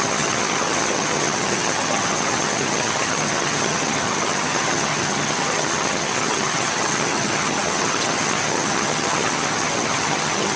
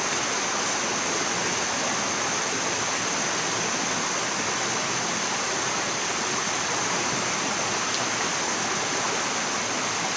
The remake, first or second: first